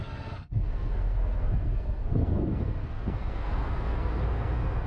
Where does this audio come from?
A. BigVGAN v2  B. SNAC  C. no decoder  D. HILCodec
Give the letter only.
B